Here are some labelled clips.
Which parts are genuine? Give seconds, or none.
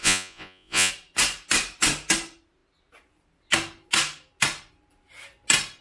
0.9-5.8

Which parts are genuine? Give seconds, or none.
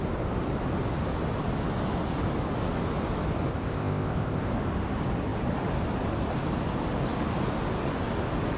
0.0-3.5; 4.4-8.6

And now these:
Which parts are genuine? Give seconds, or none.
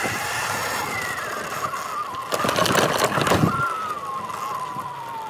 0.0-5.3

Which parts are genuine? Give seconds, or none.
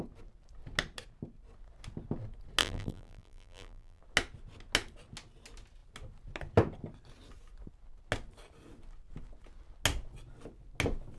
0.0-2.6; 4.0-11.2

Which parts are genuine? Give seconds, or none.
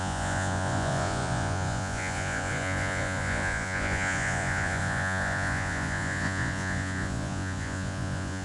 none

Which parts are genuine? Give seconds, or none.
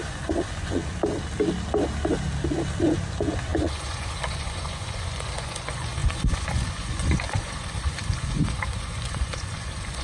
0.8-2.8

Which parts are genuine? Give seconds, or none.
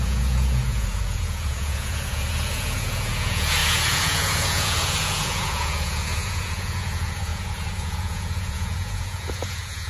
none